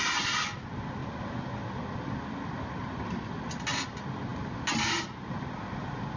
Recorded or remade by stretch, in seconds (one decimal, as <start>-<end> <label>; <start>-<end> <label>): 0.0-6.2 recorded